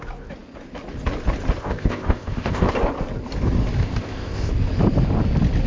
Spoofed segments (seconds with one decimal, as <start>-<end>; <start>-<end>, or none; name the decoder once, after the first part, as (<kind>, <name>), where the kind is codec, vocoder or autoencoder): 1.6-2.7 (codec, ZipCodec); 3.8-4.5